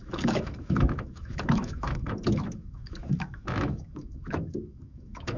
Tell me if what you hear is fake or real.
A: fake